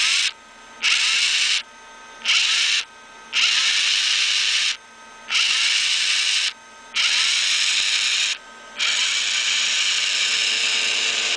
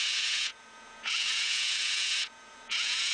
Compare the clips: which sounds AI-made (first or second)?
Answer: second